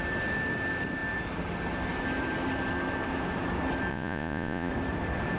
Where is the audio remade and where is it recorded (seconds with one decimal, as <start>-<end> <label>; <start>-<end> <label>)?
0.0-3.9 recorded; 3.9-4.7 remade; 4.7-5.4 recorded